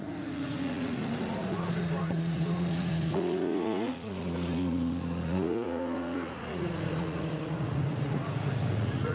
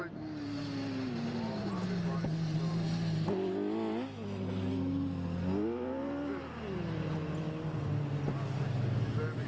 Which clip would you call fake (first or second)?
first